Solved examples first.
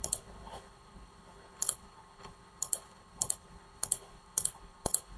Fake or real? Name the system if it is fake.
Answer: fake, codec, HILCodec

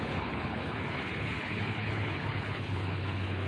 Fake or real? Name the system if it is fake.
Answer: fake, codec, HILCodec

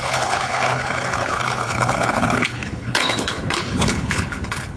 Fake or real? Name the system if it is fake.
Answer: fake, codec, HILCodec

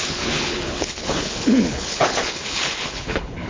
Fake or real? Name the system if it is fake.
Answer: fake, codec, HILCodec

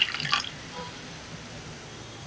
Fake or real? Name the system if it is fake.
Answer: real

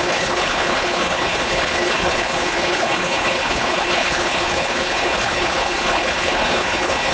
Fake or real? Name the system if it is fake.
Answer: fake, codec, HILCodec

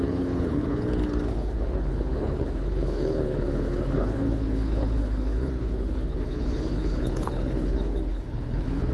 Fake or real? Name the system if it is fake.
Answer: fake, codec, HILCodec